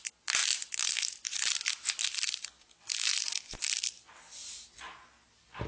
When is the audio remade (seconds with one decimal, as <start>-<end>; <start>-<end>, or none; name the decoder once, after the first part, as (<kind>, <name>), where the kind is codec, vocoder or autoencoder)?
none